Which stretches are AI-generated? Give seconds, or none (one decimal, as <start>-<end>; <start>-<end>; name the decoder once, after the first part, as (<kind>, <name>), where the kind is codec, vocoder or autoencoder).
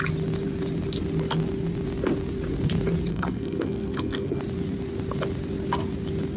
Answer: 3.1-4.4 (codec, SNAC)